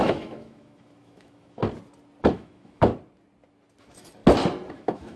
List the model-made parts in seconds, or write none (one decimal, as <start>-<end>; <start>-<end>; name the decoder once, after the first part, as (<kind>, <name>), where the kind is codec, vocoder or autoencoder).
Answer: 0.0-1.6 (autoencoder, DAC-VAE); 2.3-2.9; 3.8-4.2; 4.7-5.2